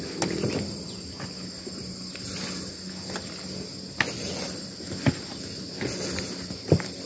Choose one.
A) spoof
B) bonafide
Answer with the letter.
B